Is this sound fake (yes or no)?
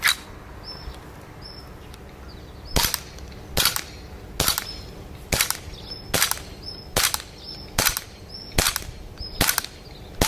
no